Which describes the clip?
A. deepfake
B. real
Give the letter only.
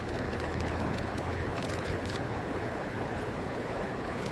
A